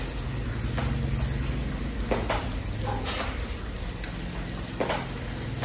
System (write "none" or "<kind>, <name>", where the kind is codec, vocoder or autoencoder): none